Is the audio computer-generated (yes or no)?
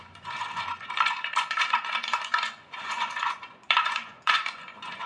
yes